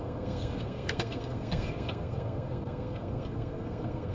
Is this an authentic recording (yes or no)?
no